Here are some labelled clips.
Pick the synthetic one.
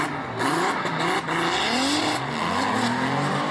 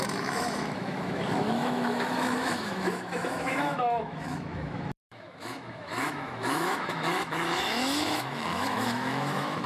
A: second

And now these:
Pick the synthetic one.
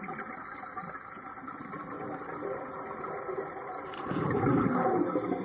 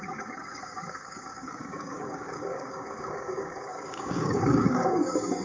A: second